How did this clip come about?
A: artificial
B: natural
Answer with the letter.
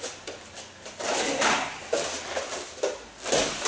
B